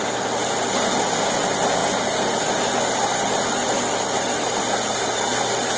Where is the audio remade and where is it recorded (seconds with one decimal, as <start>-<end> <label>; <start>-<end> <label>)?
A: 0.0-5.8 recorded